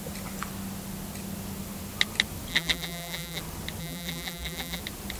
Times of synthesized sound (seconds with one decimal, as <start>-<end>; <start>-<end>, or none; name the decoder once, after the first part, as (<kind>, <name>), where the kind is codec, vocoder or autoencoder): 2.5-3.4 (vocoder, BigVGAN v2); 3.8-4.8